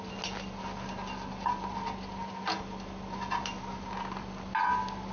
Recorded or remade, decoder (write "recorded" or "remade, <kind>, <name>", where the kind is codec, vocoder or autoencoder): recorded